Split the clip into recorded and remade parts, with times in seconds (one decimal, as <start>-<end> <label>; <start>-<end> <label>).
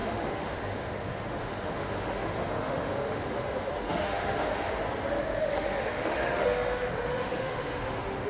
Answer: 0.0-4.8 remade; 4.8-5.4 recorded; 5.4-8.3 remade